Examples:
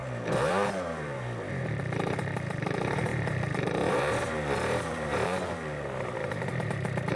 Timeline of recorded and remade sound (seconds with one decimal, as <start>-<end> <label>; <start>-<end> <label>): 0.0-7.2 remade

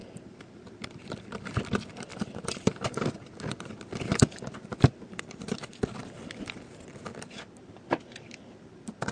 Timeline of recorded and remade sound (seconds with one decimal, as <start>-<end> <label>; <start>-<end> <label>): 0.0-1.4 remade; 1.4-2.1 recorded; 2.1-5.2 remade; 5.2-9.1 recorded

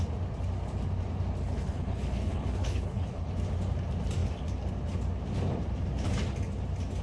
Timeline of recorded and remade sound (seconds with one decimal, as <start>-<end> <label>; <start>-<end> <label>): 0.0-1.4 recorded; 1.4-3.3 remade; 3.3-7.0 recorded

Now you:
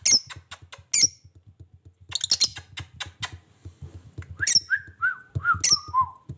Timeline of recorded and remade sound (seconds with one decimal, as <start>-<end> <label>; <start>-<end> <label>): 0.0-6.4 recorded

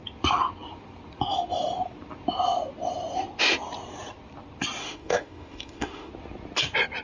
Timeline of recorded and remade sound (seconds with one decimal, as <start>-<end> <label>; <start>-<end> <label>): 0.0-4.8 recorded; 4.8-6.1 remade; 6.1-7.0 recorded